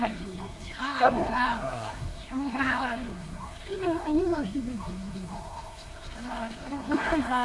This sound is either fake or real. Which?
fake